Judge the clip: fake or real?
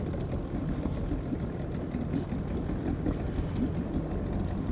real